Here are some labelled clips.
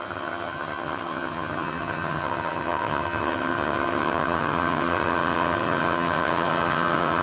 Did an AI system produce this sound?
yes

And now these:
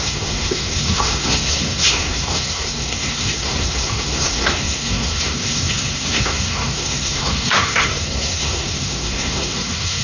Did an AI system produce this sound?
yes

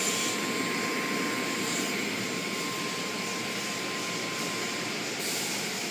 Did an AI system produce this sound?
no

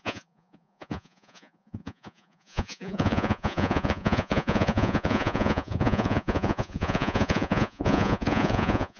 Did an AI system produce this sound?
yes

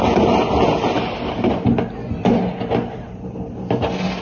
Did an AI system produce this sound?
no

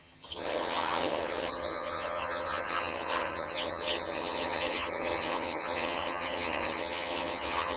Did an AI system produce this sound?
yes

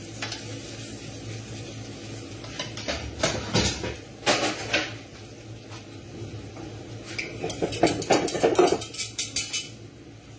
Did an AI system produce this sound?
no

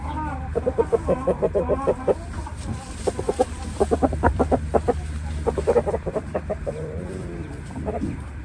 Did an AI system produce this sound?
yes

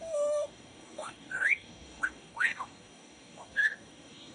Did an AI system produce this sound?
yes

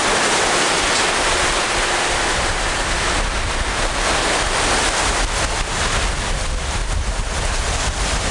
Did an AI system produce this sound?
no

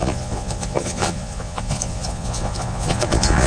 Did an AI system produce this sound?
yes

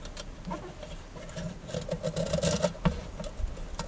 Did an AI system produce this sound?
no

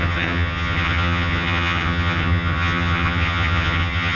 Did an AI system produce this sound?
yes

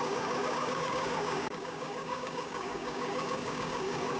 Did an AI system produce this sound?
yes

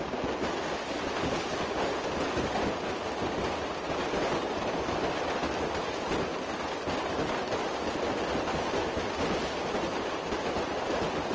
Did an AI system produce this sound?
no